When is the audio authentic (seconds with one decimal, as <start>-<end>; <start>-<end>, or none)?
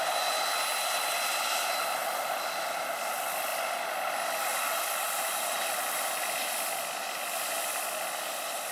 0.0-8.7